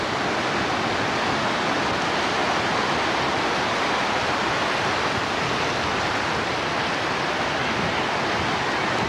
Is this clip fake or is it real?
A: real